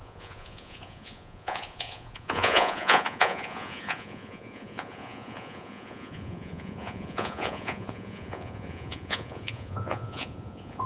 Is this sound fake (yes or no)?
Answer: yes